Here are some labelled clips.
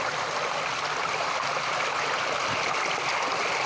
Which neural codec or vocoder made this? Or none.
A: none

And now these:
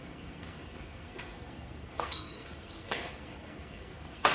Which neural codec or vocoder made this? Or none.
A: codec, SNAC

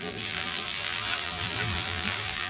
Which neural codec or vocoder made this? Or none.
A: vocoder, BigVGAN v2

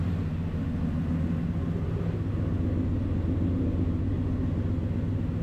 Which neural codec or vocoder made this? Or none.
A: none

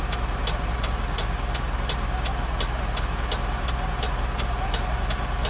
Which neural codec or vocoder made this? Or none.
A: none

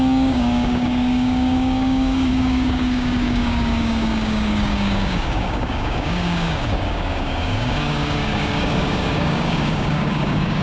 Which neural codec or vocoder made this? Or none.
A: codec, DAC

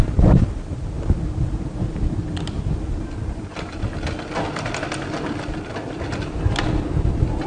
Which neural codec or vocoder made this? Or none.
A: none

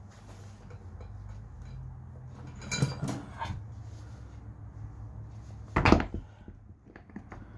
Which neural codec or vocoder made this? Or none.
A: none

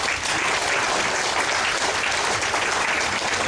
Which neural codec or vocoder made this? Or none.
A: vocoder, BigVGAN v2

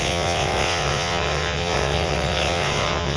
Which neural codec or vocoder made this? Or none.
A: vocoder, WaveNeXt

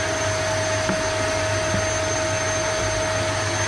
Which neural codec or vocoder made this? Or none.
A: none